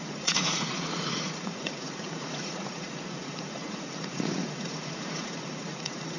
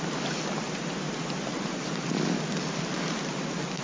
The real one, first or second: second